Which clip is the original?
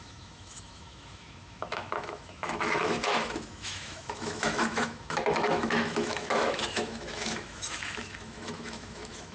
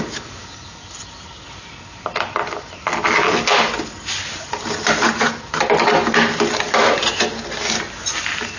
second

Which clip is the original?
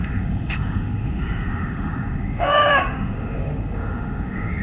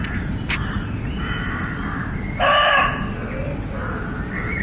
second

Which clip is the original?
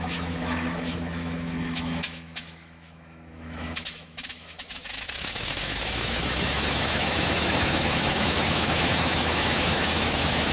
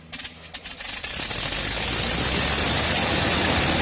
second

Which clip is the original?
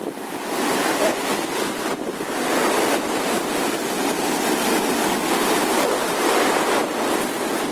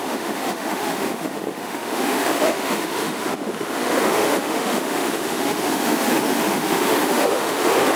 first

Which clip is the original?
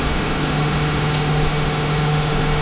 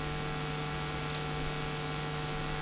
second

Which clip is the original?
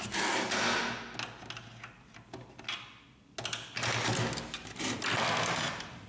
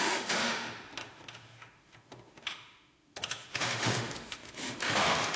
first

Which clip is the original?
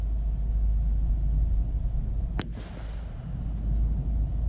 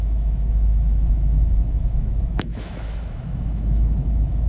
first